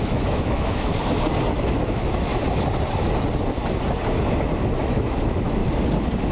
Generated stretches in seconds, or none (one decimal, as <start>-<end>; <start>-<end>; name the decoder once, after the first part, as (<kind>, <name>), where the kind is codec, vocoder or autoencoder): 0.0-0.9 (autoencoder, DAC-VAE); 1.7-2.3; 4.8-5.6